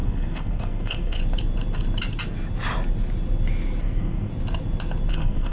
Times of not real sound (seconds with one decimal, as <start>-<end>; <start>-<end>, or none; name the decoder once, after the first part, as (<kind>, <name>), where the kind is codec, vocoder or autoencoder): 0.0-1.2 (codec, SNAC); 3.8-4.3; 5.1-5.5